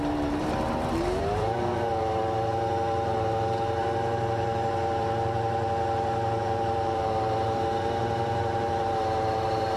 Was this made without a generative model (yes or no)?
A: no